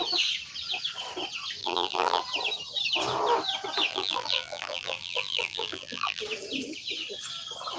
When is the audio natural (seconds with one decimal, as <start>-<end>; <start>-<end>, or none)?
0.0-1.6; 2.2-3.9; 6.2-7.8